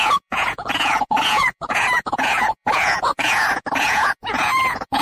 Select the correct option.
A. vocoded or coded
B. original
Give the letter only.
A